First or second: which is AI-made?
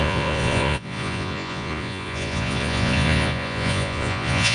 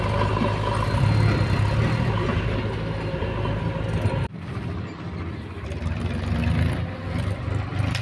first